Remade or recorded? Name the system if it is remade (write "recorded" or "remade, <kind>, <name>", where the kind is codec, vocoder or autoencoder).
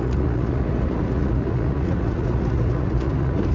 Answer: remade, vocoder, Vocos